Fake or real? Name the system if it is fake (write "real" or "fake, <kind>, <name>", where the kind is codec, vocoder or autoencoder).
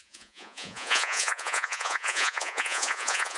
fake, vocoder, Vocos